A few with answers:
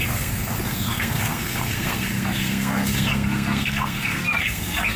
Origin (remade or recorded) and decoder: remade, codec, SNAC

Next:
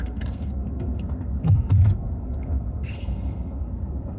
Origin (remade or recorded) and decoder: remade, codec, SNAC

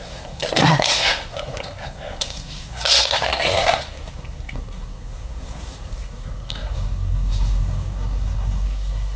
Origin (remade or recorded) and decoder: remade, codec, SNAC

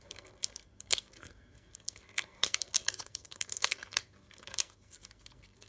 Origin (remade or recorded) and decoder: remade, codec, SNAC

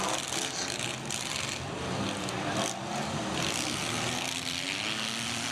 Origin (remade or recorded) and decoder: recorded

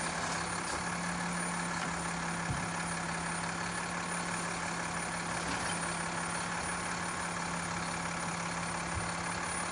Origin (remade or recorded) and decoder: recorded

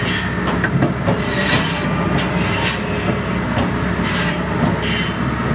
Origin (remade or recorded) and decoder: recorded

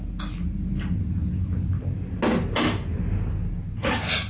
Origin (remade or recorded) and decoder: recorded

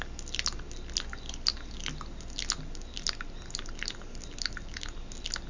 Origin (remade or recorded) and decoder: recorded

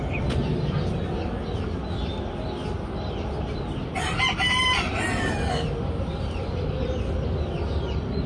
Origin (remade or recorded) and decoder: recorded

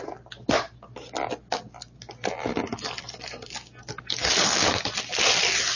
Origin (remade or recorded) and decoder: recorded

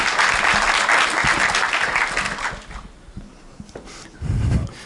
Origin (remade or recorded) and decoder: recorded